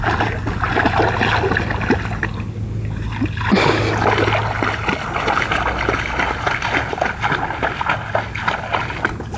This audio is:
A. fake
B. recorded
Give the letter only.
B